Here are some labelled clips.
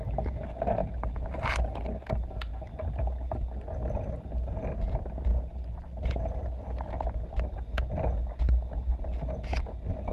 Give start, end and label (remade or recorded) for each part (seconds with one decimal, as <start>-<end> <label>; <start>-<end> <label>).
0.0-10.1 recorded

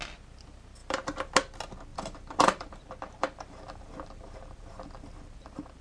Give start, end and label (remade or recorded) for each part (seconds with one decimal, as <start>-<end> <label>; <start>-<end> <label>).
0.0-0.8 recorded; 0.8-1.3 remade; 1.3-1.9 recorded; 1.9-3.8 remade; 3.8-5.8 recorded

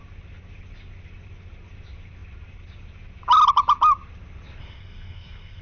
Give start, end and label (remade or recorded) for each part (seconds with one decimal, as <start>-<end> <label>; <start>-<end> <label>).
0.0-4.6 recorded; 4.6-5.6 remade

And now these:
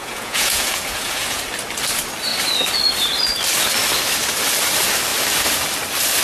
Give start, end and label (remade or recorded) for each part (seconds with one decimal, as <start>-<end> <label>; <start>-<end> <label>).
0.0-1.4 remade; 1.4-6.2 recorded

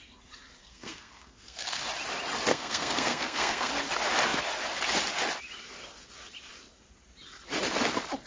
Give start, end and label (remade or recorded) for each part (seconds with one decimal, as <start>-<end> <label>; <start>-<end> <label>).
0.0-0.6 recorded; 0.6-1.8 remade; 1.8-2.5 recorded; 2.5-3.7 remade; 3.7-8.3 recorded

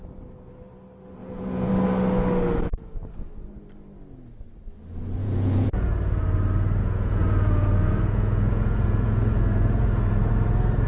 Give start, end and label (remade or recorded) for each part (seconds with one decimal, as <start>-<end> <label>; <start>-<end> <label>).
0.0-1.2 recorded; 1.2-1.7 remade; 1.7-5.2 recorded; 5.2-5.9 remade; 5.9-6.8 recorded; 6.8-10.3 remade; 10.3-10.9 recorded

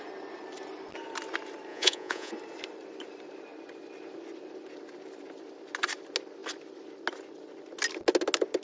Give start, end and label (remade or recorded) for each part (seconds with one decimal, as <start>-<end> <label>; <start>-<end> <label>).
0.0-1.7 recorded; 1.7-2.3 remade; 2.3-8.6 recorded